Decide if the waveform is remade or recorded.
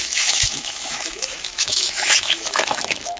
remade